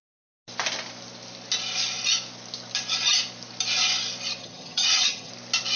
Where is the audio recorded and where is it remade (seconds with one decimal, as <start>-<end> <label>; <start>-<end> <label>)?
0.0-4.4 recorded; 4.4-5.3 remade; 5.3-5.8 recorded